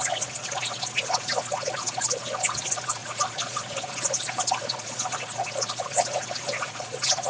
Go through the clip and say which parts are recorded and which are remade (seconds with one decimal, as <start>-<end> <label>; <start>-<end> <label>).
0.0-7.3 remade